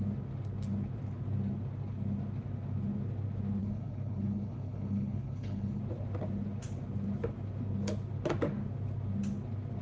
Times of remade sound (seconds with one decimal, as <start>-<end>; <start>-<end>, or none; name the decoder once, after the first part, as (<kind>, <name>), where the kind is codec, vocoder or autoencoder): 3.6-5.8 (codec, HILCodec)